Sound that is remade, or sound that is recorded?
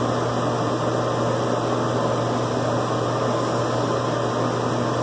recorded